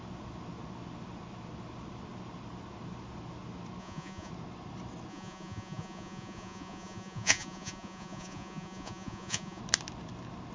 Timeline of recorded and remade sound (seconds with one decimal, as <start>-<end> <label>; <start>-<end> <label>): 0.0-3.8 recorded; 3.8-4.3 remade; 4.3-5.1 recorded; 5.1-9.6 remade; 9.6-10.5 recorded